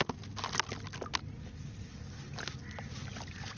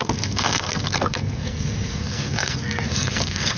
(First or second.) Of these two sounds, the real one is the first